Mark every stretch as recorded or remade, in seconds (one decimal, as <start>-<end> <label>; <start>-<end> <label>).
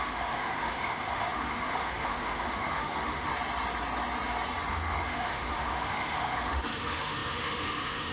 0.0-3.3 remade; 3.3-4.7 recorded; 4.7-8.1 remade